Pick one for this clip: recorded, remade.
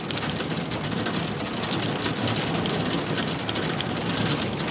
remade